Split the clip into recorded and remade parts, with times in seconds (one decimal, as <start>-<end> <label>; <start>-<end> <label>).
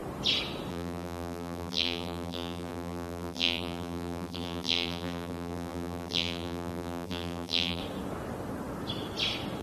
0.0-0.7 recorded; 0.7-7.8 remade; 7.8-9.6 recorded